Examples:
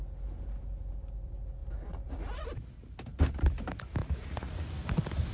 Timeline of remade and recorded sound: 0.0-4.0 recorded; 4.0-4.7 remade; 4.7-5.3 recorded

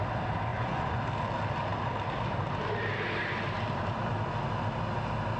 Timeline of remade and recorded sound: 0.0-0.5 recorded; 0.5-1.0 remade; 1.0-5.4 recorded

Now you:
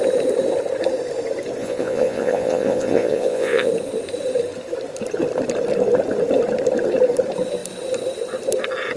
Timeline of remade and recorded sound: 0.0-1.6 recorded; 1.6-3.7 remade; 3.7-9.0 recorded

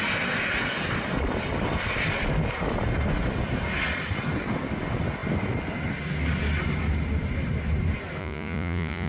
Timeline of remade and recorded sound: 0.0-8.2 recorded; 8.2-9.1 remade

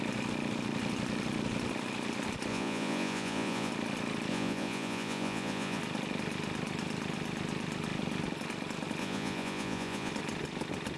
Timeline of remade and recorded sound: 0.0-2.5 recorded; 2.5-3.7 remade; 3.7-4.3 recorded; 4.3-5.8 remade; 5.8-9.0 recorded; 9.0-10.1 remade; 10.1-11.0 recorded

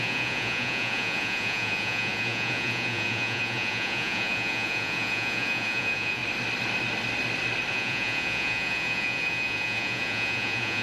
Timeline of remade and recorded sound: 0.0-6.2 remade; 6.2-7.7 recorded; 7.7-10.8 remade

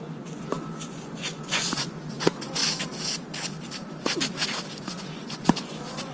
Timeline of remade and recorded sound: 0.0-2.6 remade; 2.6-4.7 recorded; 4.7-6.1 remade